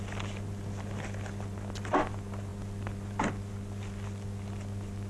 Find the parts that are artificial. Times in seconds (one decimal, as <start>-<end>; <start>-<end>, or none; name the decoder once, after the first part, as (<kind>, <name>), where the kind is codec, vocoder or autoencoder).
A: none

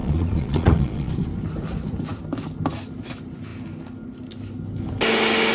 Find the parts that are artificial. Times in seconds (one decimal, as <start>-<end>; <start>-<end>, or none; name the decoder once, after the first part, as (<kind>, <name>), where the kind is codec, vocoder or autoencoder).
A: 0.0-1.1 (vocoder, Vocos)

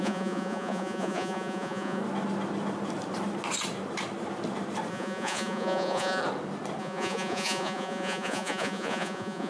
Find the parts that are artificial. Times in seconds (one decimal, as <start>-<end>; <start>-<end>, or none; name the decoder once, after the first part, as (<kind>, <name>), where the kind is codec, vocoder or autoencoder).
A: 0.0-2.0 (vocoder, Vocos); 4.9-6.2; 6.8-9.5

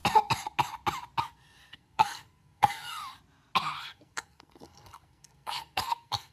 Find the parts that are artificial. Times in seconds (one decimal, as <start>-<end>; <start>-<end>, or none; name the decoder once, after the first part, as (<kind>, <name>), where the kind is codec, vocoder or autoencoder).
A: 1.2-3.0 (codec, SNAC); 3.8-6.3

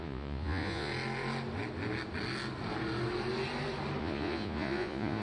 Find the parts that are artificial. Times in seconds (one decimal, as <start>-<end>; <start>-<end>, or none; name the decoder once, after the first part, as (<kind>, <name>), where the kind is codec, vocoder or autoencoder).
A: 0.0-0.9 (vocoder, Vocos); 4.0-5.2

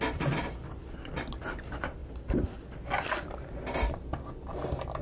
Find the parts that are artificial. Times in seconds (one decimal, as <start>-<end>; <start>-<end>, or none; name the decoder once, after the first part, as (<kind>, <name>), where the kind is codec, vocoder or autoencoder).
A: 2.0-5.0 (vocoder, BigVGAN v2)